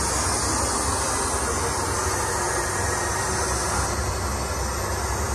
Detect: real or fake real